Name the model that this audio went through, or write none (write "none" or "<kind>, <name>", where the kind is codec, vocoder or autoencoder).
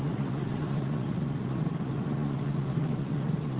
vocoder, Vocos